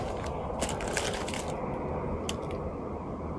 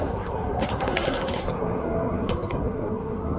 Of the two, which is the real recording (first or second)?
first